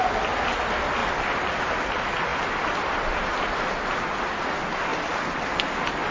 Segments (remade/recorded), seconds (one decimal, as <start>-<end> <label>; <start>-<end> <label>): 0.0-1.0 recorded; 1.0-1.9 remade; 1.9-6.1 recorded